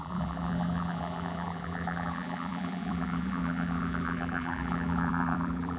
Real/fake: fake